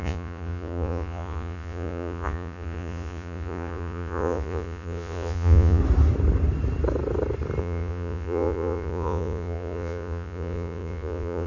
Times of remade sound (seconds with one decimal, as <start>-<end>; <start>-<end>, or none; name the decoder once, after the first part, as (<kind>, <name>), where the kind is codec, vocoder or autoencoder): 0.0-5.8 (vocoder, Vocos); 7.6-11.5